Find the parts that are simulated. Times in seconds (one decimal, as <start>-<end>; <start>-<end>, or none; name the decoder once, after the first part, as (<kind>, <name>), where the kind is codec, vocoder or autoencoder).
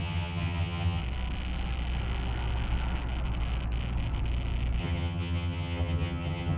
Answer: 0.0-1.0 (vocoder, HiFi-GAN); 4.8-6.6